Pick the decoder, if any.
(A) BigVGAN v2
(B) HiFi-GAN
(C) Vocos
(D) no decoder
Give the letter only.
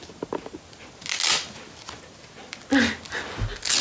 D